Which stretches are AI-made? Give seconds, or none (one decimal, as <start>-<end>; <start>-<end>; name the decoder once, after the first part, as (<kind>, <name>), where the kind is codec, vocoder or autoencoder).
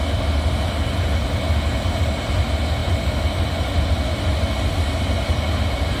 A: none